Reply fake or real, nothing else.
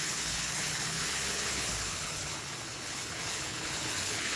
fake